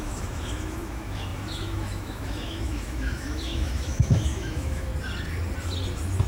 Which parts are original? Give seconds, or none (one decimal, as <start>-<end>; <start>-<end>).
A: 4.9-6.3